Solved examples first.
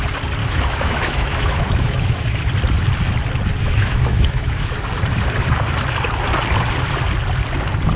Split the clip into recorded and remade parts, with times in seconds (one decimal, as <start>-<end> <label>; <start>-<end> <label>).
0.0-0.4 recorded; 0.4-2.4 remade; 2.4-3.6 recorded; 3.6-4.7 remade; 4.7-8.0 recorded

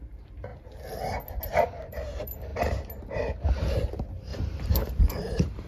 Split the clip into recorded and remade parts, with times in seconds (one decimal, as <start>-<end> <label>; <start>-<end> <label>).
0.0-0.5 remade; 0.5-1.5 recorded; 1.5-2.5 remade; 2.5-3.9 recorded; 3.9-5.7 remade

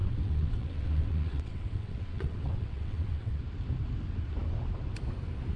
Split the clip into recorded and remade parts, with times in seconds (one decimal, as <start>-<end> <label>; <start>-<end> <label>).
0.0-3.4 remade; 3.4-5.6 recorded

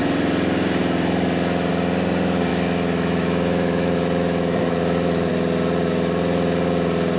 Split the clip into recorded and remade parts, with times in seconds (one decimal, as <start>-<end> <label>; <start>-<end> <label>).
0.0-2.5 recorded; 2.5-5.3 remade; 5.3-7.2 recorded